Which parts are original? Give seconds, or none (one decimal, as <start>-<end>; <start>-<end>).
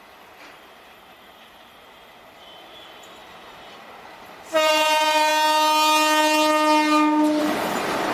5.3-7.4